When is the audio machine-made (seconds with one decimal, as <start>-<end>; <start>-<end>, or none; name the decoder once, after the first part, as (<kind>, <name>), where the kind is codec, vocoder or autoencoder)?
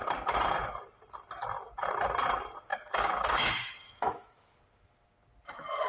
2.7-4.6 (autoencoder, DAC-VAE)